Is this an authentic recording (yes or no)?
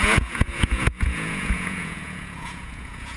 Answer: no